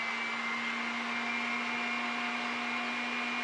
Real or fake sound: real